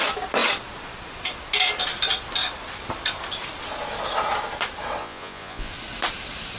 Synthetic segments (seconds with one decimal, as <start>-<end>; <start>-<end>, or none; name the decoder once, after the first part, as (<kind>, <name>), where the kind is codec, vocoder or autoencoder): 5.0-5.7 (vocoder, Vocos)